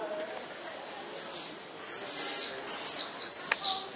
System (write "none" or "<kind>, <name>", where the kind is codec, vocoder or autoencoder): none